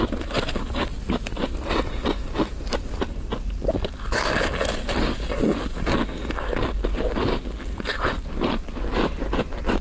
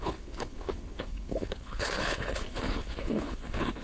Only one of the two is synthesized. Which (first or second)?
second